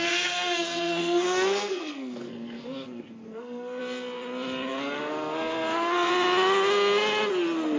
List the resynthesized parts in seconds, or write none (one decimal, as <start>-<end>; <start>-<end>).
0.0-3.8; 4.7-6.1